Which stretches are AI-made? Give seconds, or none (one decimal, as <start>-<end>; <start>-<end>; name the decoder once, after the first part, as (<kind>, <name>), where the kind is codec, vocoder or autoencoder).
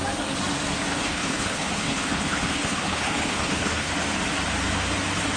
0.9-3.9 (codec, HILCodec)